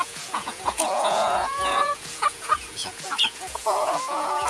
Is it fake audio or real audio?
fake